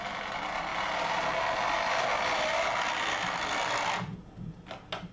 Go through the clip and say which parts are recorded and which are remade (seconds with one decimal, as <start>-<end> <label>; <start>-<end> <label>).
0.0-5.1 recorded